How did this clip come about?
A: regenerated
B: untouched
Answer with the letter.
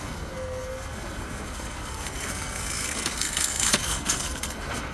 A